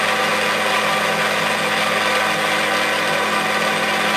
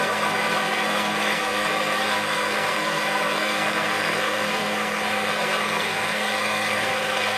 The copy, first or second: second